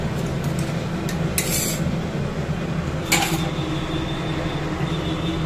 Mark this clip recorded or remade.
recorded